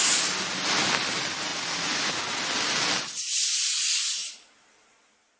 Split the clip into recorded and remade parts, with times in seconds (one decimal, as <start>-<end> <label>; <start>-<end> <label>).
0.0-1.5 recorded; 1.5-2.2 remade; 2.2-5.4 recorded